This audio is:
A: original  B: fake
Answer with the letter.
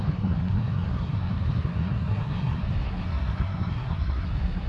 B